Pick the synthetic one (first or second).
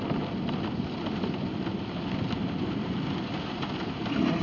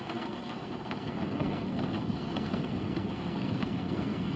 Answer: second